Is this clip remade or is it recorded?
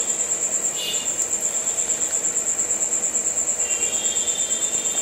recorded